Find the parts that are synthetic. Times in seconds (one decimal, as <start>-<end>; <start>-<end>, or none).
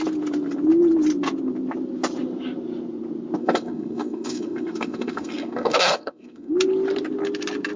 3.4-6.5